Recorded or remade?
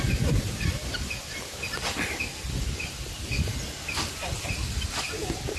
recorded